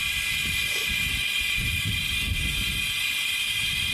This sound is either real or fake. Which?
real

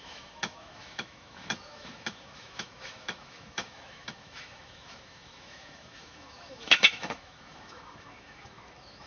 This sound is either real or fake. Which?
fake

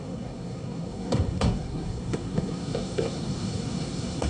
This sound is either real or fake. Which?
fake